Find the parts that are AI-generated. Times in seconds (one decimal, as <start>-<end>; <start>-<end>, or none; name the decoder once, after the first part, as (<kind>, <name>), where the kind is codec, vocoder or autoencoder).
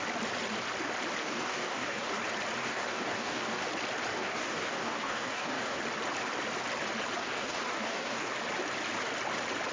1.2-2.1 (codec, DAC); 2.6-3.6; 4.1-5.8; 7.2-8.3